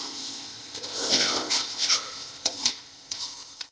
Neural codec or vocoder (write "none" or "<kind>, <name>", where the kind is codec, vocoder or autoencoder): codec, ZipCodec